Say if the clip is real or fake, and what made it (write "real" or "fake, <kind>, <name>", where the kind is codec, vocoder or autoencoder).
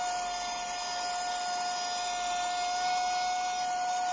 real